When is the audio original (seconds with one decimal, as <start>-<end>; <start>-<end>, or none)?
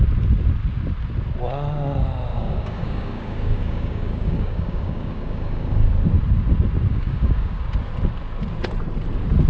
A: 0.0-2.3; 5.8-6.9; 7.6-9.5